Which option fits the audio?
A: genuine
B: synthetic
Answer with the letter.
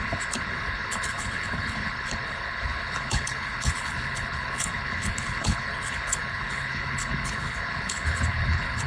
B